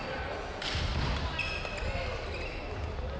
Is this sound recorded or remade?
recorded